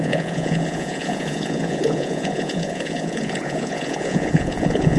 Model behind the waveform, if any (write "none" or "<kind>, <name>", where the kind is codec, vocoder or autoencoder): vocoder, Vocos